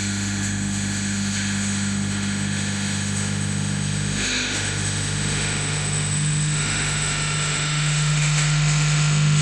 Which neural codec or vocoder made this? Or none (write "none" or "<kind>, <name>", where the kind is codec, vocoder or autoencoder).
autoencoder, DAC-VAE